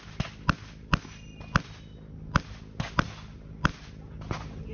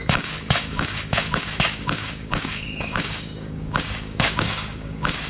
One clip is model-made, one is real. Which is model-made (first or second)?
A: second